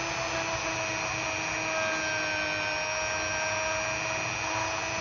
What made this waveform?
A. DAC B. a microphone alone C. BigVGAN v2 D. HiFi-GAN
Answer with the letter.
B